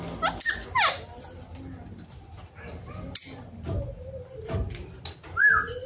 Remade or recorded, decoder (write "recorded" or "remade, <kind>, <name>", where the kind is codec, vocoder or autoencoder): recorded